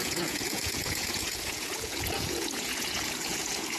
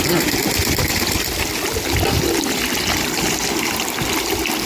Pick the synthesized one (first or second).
first